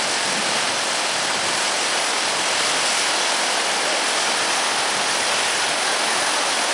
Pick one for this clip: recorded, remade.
recorded